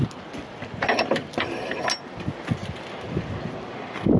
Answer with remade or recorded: recorded